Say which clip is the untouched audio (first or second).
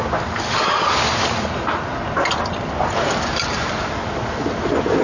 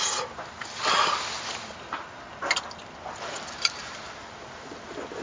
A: first